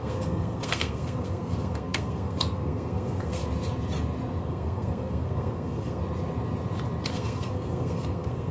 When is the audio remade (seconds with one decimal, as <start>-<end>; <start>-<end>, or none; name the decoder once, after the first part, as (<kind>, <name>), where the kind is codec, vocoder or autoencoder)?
0.0-3.4 (codec, SNAC); 4.4-6.0; 7.1-8.5